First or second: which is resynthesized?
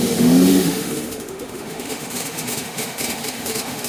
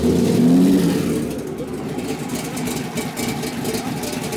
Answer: first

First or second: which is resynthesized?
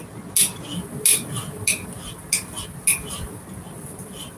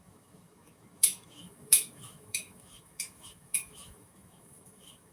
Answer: second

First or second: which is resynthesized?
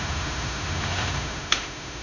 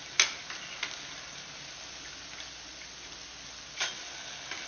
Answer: first